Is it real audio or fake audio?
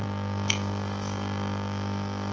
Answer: fake